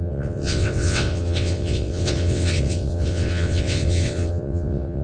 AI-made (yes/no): yes